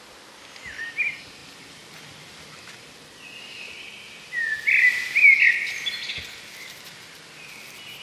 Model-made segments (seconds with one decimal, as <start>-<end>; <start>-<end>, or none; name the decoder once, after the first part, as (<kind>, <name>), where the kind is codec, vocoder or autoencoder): none